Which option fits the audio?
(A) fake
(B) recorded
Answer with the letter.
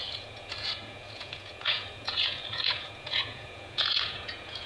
A